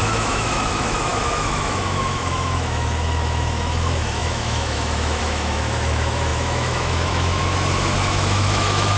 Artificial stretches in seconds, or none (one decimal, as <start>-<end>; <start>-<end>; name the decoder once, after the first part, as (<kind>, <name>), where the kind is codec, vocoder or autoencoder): 0.0-9.0 (autoencoder, DAC-VAE)